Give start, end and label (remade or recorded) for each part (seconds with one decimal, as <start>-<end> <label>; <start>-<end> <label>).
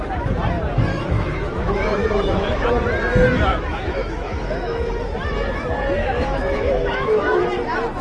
0.0-0.9 recorded; 0.9-2.7 remade; 2.7-3.5 recorded; 3.5-4.9 remade; 4.9-6.0 recorded; 6.0-7.4 remade; 7.4-8.0 recorded